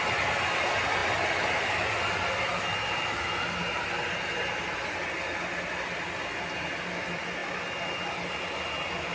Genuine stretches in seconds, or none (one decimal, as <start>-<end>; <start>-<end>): 0.0-9.1